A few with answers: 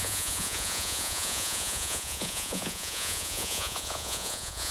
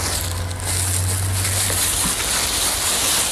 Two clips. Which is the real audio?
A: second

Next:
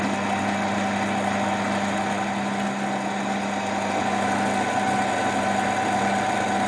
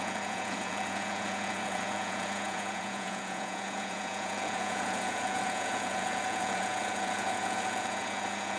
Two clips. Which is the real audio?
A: first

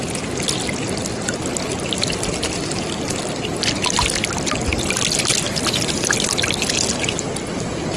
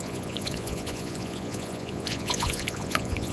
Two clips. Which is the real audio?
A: first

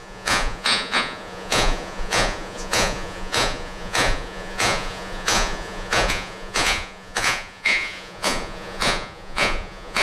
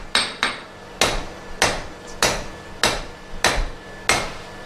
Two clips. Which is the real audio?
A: second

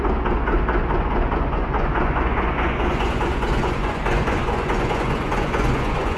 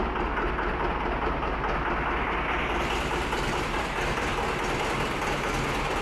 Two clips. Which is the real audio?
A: second